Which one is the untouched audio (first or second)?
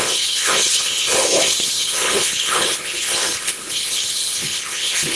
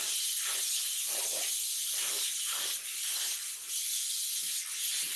second